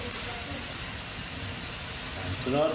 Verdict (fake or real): real